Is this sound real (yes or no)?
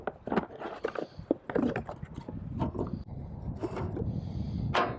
yes